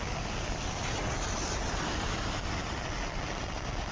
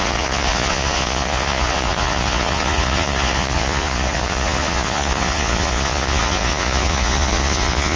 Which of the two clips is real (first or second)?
first